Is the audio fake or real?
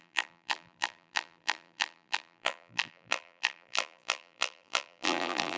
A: fake